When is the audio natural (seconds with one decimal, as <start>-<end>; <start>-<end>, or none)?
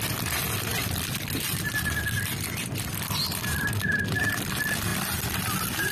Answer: 0.0-5.9